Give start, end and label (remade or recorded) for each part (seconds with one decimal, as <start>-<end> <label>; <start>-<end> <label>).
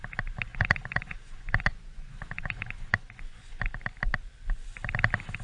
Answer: 0.0-0.5 recorded; 0.5-3.6 remade; 3.6-5.4 recorded